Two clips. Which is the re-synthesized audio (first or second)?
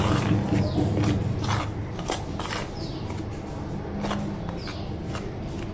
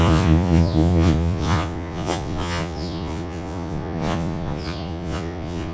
second